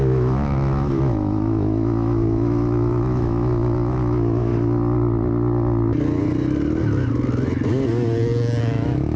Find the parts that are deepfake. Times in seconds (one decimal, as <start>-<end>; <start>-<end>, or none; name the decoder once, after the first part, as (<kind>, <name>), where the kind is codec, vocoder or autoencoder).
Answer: 0.0-4.5 (autoencoder, DAC-VAE); 8.6-9.2